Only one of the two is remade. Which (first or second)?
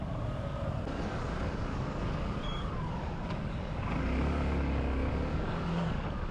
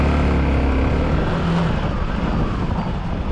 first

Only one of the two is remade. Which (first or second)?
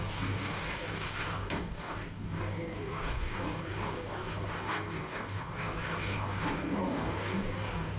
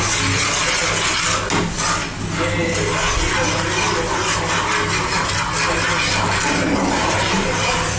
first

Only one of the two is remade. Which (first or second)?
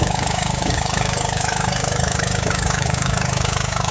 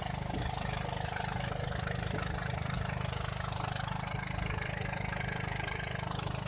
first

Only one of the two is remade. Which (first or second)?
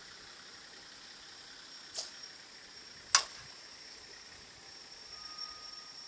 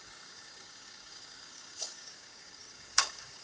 second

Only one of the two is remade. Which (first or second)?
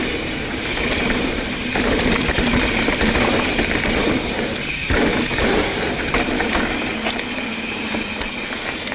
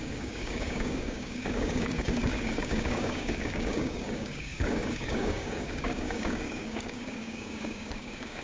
second